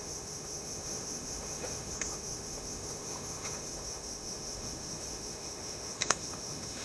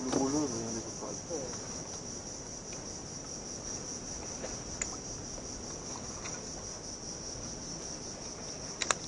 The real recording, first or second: second